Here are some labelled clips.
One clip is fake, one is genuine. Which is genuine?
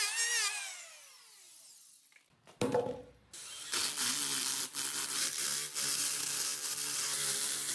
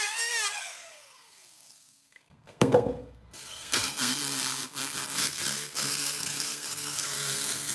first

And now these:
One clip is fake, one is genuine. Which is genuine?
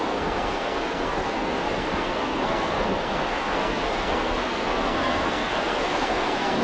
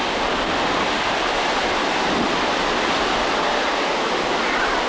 second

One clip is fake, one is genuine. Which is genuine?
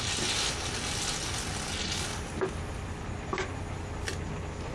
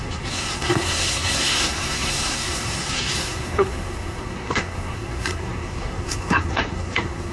first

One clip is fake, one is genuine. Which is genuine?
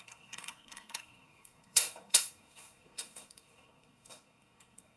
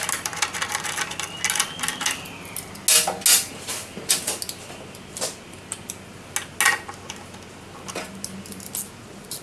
second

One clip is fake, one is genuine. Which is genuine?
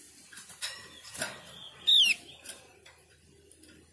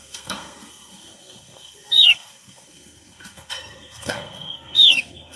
first